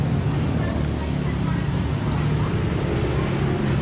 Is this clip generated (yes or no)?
no